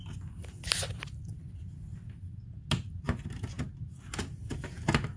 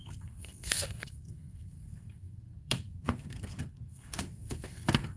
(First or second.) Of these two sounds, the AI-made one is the second